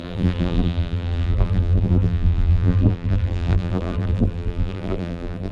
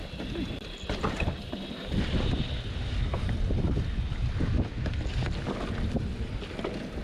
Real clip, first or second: second